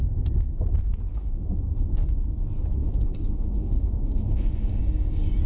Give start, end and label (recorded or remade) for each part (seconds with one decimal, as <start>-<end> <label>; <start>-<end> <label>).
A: 0.0-1.1 recorded; 1.1-1.9 remade; 1.9-2.8 recorded; 2.8-4.8 remade; 4.8-5.5 recorded